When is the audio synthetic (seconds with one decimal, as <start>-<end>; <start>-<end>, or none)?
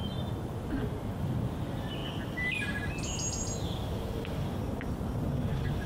0.0-0.8